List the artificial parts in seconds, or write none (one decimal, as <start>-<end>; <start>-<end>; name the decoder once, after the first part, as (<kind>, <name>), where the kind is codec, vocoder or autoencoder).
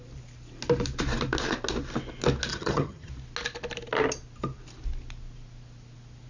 2.5-3.1 (vocoder, HiFi-GAN)